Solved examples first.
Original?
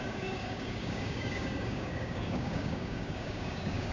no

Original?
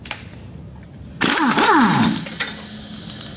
yes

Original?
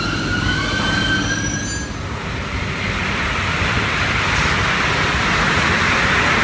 yes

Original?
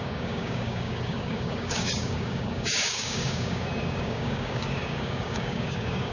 no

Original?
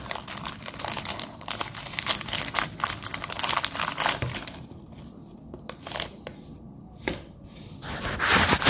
yes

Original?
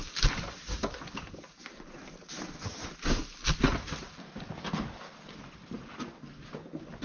yes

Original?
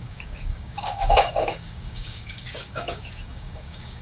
no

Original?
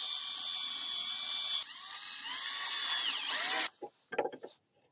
yes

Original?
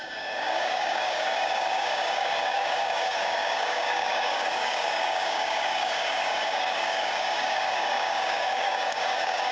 no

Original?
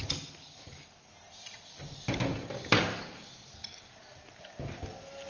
yes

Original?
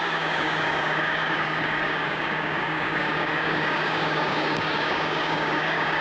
no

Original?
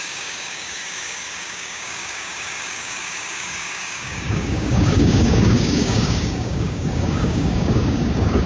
no